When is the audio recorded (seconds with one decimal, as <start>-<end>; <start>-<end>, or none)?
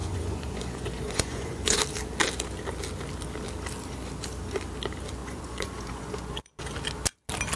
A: 1.8-5.2; 6.5-7.5